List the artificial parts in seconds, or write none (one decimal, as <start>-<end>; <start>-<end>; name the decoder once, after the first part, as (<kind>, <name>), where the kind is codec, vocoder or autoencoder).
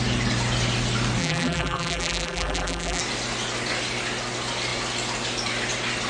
1.2-3.0 (vocoder, BigVGAN v2)